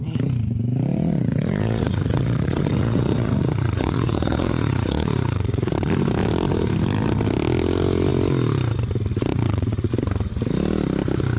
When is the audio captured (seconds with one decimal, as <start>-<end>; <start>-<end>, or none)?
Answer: 0.0-0.9; 5.7-9.3; 9.9-11.4